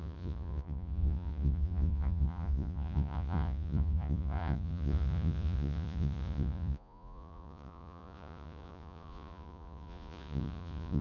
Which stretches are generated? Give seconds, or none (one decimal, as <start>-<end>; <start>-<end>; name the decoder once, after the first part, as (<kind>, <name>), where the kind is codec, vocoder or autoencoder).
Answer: 0.0-11.0 (vocoder, Vocos)